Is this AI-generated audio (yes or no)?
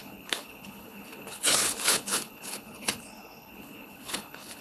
yes